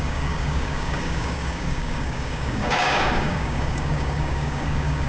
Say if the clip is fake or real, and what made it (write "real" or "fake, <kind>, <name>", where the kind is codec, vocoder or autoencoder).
fake, codec, DAC